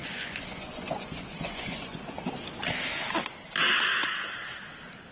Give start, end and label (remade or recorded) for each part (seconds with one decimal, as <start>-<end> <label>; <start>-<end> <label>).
0.0-2.0 remade; 2.0-3.9 recorded; 3.9-4.6 remade; 4.6-5.1 recorded